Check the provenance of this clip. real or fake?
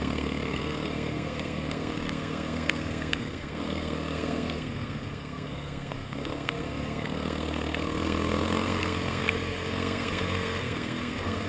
fake